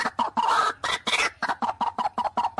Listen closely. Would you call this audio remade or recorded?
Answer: recorded